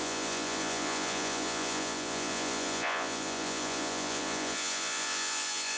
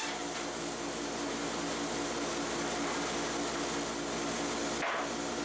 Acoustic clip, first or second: second